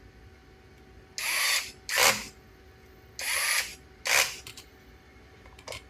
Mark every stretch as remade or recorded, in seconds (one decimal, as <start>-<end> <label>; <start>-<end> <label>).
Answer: 0.0-5.9 recorded